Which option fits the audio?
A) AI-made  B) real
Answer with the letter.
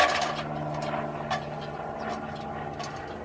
B